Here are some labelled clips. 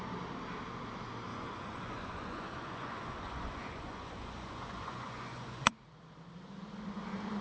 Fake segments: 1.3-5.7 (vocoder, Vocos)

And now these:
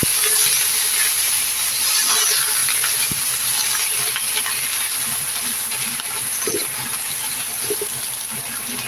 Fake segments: none

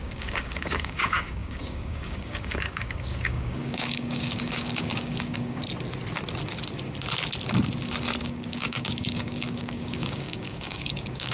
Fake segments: 0.0-5.6 (codec, DAC); 8.2-11.3

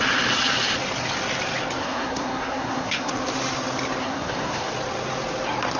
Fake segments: 1.8-3.1 (codec, SNAC); 4.0-4.7

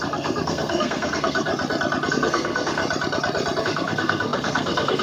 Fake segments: 0.0-1.5 (codec, SNAC); 2.1-2.8; 3.6-5.0

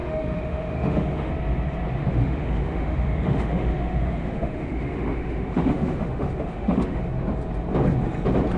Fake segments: 0.0-1.3 (autoencoder, DAC-VAE); 2.0-7.0